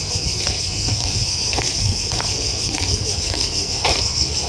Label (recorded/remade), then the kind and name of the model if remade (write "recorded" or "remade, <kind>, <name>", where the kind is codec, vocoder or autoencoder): remade, codec, SNAC